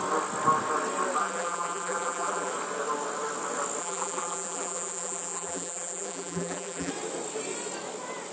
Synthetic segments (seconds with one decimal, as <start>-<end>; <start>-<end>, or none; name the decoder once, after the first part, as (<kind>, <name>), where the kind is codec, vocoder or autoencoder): 1.2-2.5 (vocoder, BigVGAN v2); 3.8-6.9